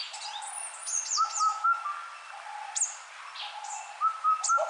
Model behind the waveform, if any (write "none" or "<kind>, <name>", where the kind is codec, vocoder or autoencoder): none